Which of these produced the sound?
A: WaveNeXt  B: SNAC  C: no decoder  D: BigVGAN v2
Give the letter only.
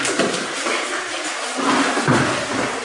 C